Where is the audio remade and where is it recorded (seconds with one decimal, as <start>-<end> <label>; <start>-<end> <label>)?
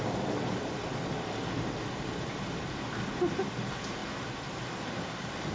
0.0-5.5 recorded